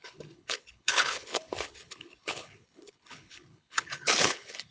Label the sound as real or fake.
fake